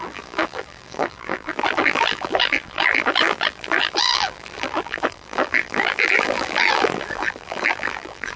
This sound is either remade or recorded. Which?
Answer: remade